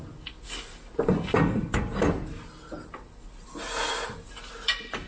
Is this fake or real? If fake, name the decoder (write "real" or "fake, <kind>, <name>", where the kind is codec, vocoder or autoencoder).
real